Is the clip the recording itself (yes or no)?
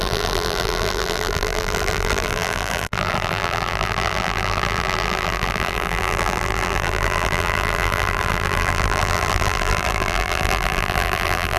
no